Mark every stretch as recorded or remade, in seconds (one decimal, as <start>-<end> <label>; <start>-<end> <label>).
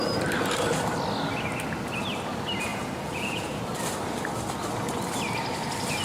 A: 0.0-2.7 recorded; 2.7-3.6 remade; 3.6-6.0 recorded